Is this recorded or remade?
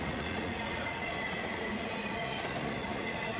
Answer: remade